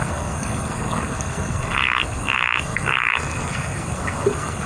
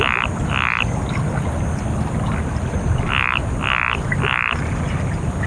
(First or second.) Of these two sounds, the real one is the second